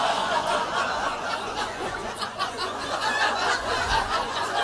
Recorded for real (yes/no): no